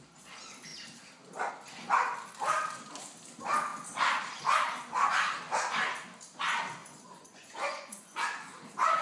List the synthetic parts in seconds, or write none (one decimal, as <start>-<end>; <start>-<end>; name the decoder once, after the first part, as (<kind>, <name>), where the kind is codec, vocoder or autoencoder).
6.8-8.5 (vocoder, Vocos)